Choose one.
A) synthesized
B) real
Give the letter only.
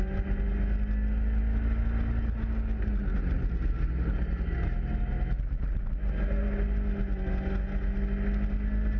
B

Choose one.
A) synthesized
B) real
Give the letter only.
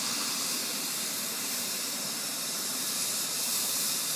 A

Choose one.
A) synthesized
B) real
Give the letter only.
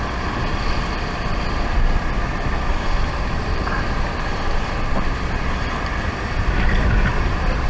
A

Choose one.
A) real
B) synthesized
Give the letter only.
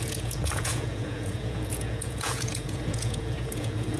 B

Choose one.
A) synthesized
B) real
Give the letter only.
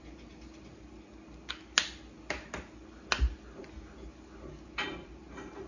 B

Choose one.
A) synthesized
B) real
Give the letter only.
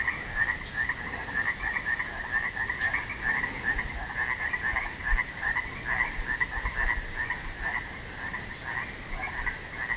B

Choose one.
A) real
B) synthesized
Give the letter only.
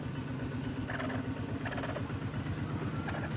A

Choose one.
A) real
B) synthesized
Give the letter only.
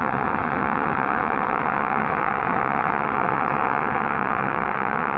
B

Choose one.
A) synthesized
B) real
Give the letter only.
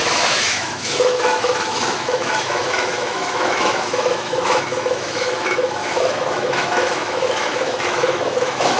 A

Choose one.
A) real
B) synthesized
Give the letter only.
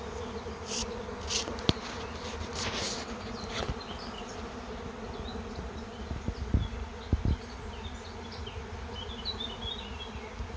A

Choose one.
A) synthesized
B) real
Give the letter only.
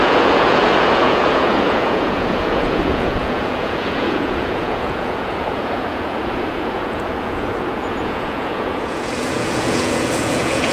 A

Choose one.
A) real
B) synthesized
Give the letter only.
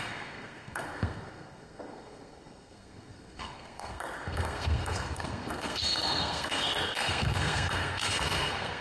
B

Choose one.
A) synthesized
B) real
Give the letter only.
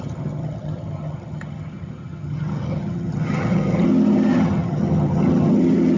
A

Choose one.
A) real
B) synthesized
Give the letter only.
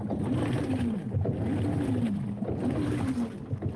A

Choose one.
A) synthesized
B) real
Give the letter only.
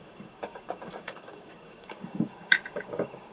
A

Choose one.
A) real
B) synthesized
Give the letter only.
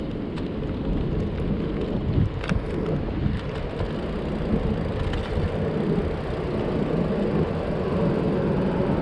A